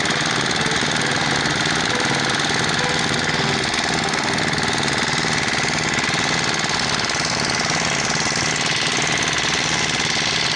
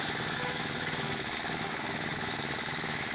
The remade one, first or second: second